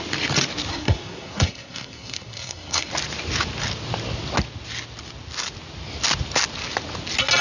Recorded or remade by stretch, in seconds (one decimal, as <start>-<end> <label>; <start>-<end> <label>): 0.0-0.7 recorded; 0.7-2.9 remade; 2.9-7.4 recorded